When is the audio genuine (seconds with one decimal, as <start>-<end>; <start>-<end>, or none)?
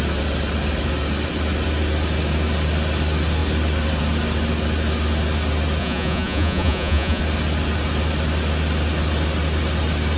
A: 0.0-5.8; 7.2-10.2